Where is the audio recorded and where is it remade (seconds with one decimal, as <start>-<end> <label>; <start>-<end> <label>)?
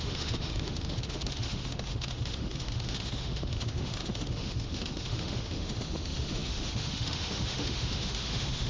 0.0-8.7 remade